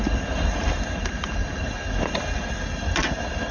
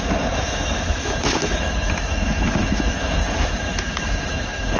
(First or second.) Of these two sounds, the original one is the first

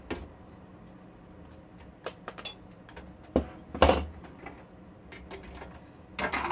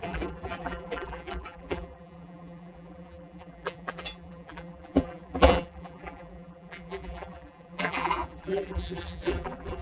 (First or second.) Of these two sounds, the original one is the first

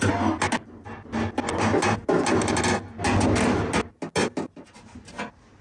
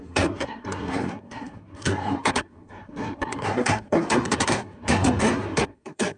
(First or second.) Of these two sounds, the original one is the first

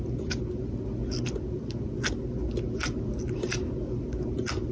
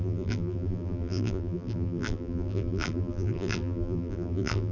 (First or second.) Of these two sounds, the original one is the first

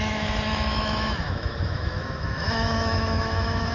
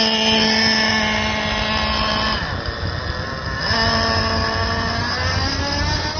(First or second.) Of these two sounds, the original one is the second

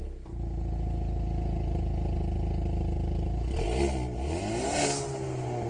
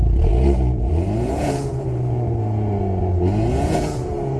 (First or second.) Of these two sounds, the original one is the first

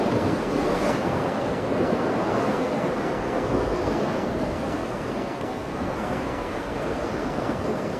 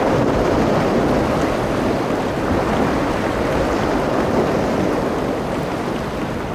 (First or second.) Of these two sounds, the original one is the second